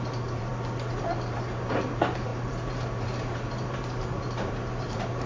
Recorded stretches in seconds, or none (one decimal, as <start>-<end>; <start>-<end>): 0.5-1.0

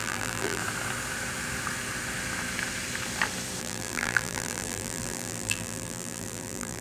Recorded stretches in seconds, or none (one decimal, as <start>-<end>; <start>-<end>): 0.6-3.6

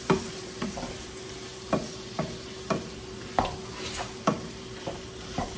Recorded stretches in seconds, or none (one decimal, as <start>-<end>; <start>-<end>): 0.0-5.6

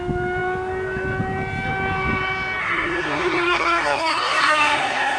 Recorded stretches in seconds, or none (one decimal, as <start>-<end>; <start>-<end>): 0.0-2.6

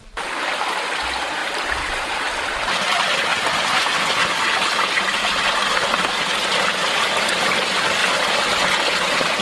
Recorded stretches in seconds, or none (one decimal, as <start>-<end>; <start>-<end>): 0.0-3.3; 4.2-9.4

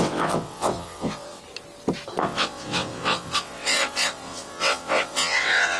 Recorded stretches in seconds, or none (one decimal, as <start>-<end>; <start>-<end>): 1.4-2.2

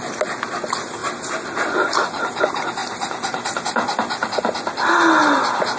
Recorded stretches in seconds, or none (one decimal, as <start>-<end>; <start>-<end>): 0.0-5.8